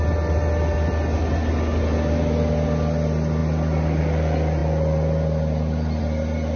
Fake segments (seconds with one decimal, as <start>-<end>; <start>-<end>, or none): none